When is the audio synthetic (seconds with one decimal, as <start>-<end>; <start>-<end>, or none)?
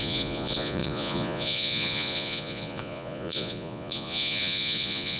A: 0.0-5.2